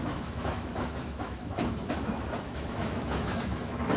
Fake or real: fake